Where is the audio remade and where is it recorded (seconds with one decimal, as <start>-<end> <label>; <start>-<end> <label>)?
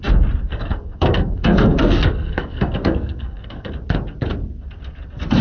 0.0-0.5 recorded; 0.5-3.7 remade; 3.7-5.4 recorded